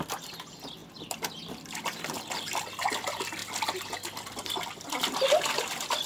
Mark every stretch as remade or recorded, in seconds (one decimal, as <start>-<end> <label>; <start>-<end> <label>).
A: 0.0-6.1 recorded